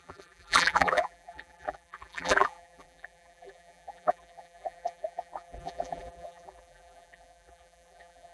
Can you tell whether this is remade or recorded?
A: remade